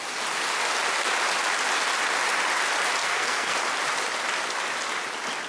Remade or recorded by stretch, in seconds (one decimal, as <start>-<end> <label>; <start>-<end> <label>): 0.0-3.0 recorded; 3.0-3.6 remade; 3.6-5.5 recorded